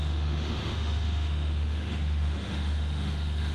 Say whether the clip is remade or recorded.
remade